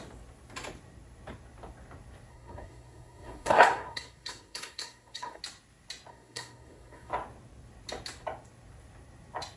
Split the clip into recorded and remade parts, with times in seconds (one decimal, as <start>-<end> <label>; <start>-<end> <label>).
0.0-2.3 recorded; 2.3-5.4 remade; 5.4-6.1 recorded; 6.1-7.1 remade; 7.1-9.6 recorded